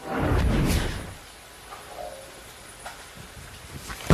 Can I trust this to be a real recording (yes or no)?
yes